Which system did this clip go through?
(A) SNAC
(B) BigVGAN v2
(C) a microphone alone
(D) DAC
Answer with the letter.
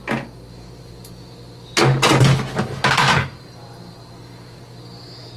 C